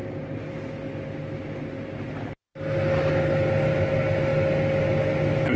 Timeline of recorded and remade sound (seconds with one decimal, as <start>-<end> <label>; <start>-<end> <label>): 0.0-5.6 recorded